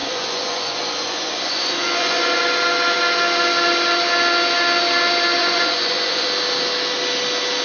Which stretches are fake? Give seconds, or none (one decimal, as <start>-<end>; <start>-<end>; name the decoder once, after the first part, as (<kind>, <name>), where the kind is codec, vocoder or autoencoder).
0.0-2.4 (vocoder, Vocos); 5.4-6.3